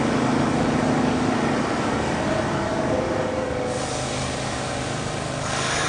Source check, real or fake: fake